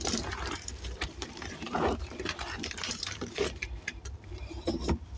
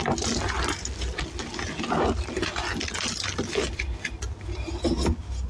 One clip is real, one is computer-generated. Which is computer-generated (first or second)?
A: first